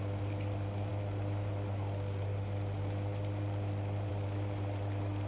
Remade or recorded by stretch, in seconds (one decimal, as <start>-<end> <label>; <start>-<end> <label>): 0.0-5.3 recorded